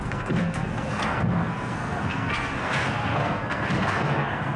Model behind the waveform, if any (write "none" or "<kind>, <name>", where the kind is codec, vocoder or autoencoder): codec, SNAC